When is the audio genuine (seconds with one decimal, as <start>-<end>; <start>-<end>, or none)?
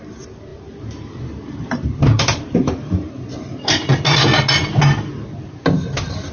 0.0-0.5; 3.1-6.3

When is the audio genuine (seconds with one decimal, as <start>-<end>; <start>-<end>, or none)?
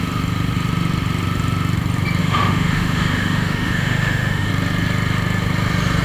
0.0-2.2; 4.5-6.0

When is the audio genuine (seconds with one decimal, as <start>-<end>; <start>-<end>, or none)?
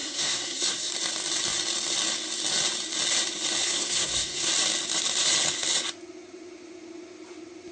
0.9-3.6; 4.5-7.7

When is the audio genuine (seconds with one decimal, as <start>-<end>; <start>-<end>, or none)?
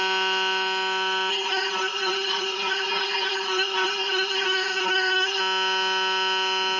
0.0-1.3; 5.4-6.8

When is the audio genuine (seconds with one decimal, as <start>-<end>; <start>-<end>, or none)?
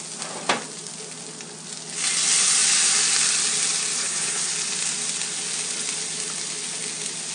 0.0-4.0; 4.5-7.3